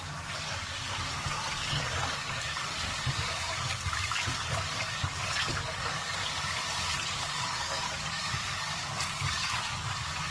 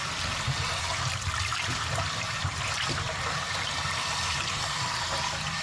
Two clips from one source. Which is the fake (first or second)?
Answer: first